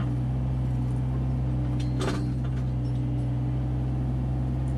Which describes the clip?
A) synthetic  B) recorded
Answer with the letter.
B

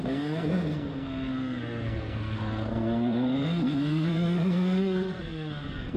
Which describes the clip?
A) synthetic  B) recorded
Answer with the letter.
A